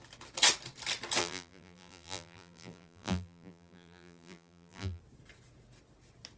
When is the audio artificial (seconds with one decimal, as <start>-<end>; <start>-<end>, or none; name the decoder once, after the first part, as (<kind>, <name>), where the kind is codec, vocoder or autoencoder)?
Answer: 1.2-5.0 (vocoder, BigVGAN v2)

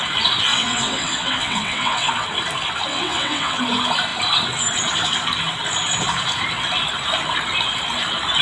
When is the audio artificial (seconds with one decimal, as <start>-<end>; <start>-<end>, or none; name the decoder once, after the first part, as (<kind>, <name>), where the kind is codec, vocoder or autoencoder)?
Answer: 0.5-2.1 (vocoder, WaveNeXt); 2.9-3.6

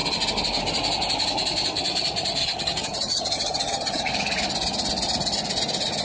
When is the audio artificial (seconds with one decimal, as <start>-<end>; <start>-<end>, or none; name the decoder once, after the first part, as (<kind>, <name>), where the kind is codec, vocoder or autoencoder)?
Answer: 2.4-4.1 (vocoder, HiFi-GAN)

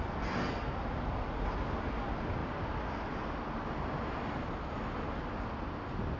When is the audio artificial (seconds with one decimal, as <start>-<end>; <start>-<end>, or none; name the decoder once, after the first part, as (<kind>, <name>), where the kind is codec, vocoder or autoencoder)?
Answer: none